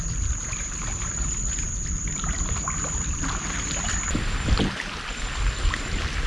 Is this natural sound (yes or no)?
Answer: yes